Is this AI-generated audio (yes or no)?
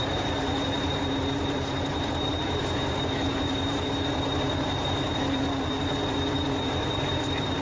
yes